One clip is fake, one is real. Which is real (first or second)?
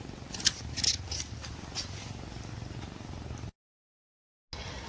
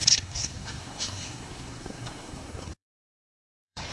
first